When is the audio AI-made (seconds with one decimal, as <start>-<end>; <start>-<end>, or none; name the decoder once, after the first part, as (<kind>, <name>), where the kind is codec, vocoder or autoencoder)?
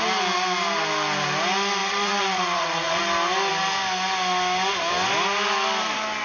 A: 1.8-3.0 (vocoder, Vocos)